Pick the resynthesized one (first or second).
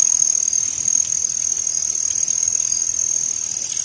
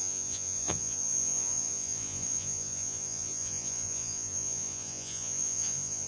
second